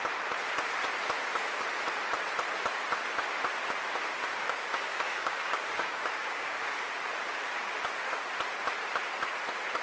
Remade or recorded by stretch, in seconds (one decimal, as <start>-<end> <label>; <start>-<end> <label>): 0.0-4.2 recorded; 4.2-6.9 remade; 6.9-9.8 recorded